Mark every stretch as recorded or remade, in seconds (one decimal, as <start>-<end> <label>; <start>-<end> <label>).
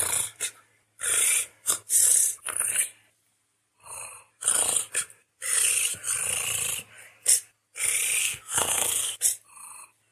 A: 0.0-8.2 recorded; 8.2-9.2 remade; 9.2-10.1 recorded